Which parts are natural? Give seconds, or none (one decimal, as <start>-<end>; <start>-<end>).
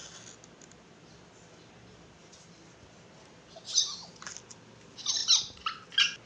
0.0-6.3